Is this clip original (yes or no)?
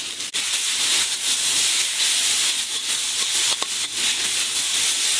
yes